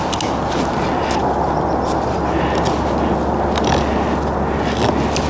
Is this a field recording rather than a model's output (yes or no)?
yes